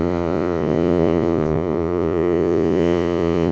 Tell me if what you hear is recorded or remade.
remade